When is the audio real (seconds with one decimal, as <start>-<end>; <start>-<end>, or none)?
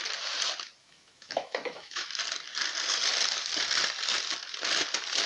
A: 0.0-0.8; 2.1-5.3